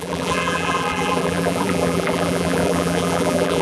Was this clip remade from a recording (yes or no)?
yes